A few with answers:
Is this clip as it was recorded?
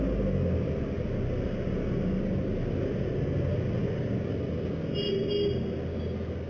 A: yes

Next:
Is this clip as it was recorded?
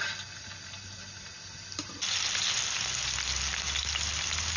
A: yes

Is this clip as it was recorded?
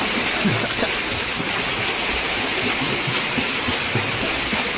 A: yes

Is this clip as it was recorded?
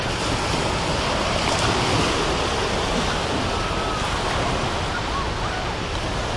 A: yes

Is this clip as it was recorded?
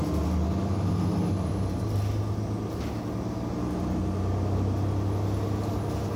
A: yes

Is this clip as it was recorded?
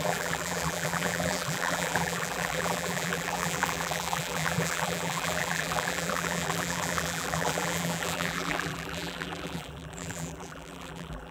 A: no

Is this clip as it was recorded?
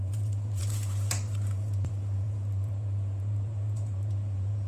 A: no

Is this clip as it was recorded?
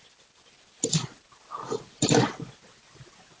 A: yes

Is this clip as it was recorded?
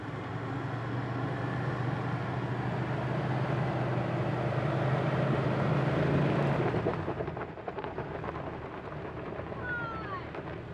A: yes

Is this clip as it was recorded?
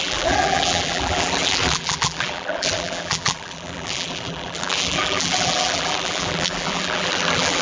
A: no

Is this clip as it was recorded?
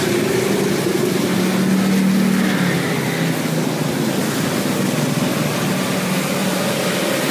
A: yes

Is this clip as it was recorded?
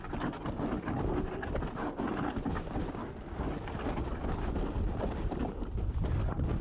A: yes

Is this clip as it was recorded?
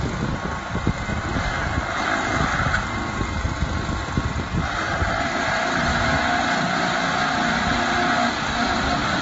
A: yes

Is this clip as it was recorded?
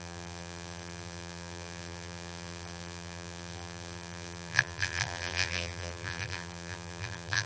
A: no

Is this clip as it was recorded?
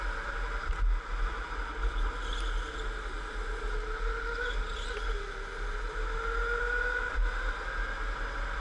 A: yes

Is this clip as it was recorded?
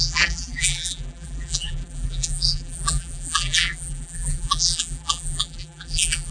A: no